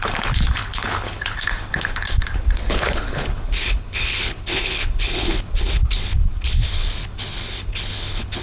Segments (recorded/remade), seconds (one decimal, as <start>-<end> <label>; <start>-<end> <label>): 0.0-8.4 remade